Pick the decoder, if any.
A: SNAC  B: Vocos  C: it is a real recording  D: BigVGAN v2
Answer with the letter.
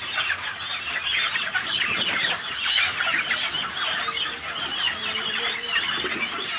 C